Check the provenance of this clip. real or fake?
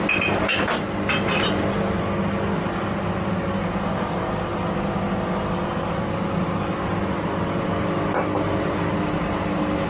real